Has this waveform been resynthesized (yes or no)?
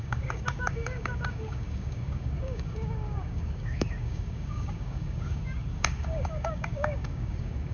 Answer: yes